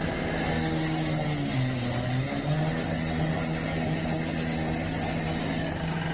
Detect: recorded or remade recorded